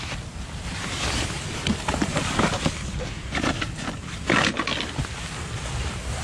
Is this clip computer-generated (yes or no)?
no